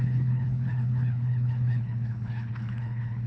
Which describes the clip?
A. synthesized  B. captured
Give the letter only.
A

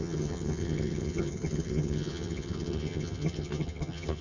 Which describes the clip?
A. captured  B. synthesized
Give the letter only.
B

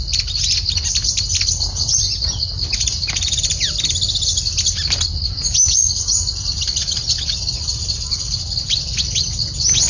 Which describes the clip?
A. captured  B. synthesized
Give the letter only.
A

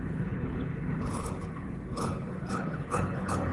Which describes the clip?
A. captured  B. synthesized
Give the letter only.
B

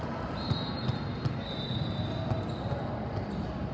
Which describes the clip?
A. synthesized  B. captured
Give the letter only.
B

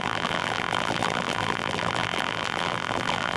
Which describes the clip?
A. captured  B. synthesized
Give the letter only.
B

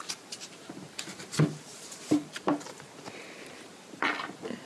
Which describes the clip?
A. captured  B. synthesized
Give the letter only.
B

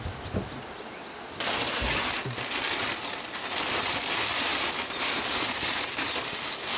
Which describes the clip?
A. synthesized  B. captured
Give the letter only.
B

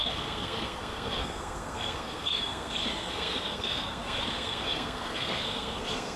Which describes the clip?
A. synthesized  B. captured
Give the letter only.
A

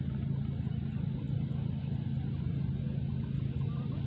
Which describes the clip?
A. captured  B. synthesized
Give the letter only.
A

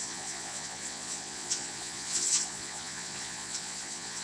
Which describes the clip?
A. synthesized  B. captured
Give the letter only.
A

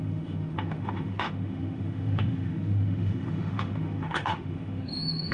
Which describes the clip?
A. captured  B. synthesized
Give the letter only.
B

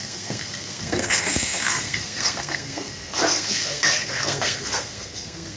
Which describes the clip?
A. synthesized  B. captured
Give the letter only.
A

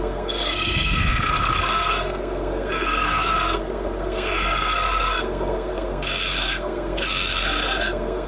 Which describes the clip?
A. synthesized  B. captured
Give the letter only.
A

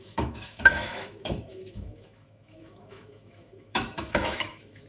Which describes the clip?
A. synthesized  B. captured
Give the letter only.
A